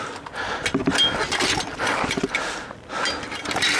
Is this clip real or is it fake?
real